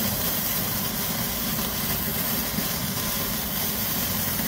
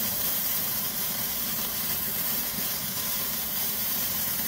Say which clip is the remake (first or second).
second